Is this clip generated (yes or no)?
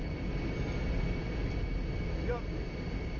no